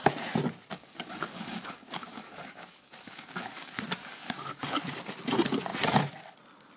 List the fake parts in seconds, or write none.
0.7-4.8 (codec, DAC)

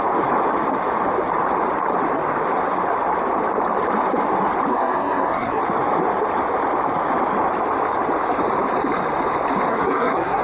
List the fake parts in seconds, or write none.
4.7-5.6 (codec, SNAC); 9.7-10.4

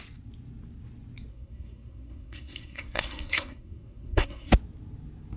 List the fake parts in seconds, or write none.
1.3-4.5 (codec, SNAC)